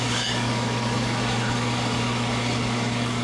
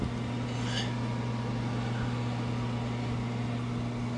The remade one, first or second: first